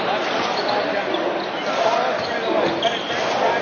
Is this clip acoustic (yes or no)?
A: yes